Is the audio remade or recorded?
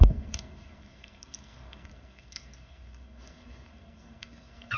remade